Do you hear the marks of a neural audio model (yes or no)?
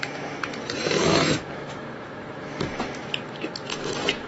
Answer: yes